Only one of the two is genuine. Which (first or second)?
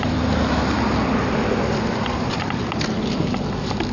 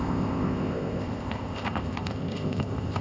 first